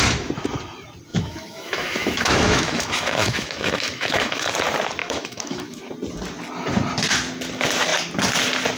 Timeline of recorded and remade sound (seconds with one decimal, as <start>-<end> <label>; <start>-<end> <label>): 0.0-1.1 recorded; 1.1-4.5 remade; 4.5-5.0 recorded; 5.0-5.9 remade; 5.9-8.8 recorded